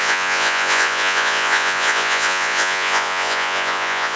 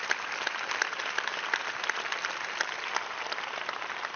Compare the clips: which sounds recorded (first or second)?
second